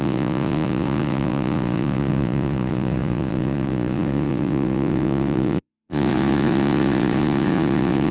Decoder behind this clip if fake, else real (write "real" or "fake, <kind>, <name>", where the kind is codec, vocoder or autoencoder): fake, vocoder, Vocos